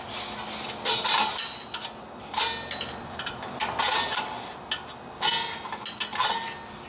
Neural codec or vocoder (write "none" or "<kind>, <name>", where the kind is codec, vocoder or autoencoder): none